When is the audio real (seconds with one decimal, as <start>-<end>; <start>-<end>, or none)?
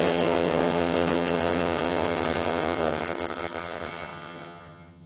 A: none